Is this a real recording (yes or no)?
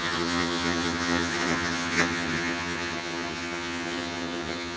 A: no